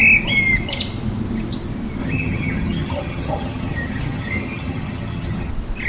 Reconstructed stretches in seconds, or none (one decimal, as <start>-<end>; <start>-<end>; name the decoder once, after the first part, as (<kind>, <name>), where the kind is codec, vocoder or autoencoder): 2.0-5.5 (vocoder, HiFi-GAN)